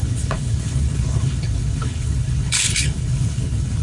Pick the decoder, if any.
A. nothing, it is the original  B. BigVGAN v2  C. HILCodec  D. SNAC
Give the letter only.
C